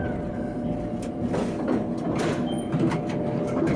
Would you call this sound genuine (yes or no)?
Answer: yes